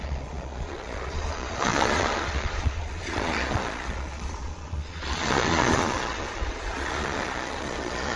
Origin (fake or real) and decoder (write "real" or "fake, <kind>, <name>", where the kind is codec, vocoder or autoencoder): fake, vocoder, Vocos